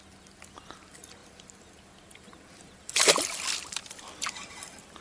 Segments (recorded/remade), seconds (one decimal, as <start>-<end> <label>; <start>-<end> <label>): 0.0-1.2 recorded; 1.2-1.7 remade; 1.7-2.1 recorded; 2.1-4.2 remade; 4.2-5.0 recorded